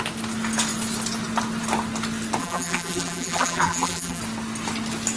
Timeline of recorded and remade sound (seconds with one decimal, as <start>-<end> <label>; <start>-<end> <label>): 0.0-2.4 recorded; 2.4-4.2 remade; 4.2-5.2 recorded